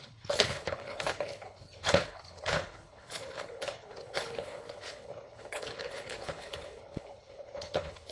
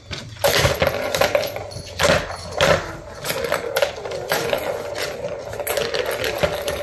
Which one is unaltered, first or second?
second